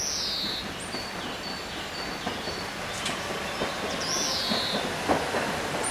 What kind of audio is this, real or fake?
real